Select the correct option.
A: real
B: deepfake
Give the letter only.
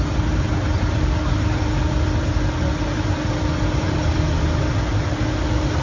A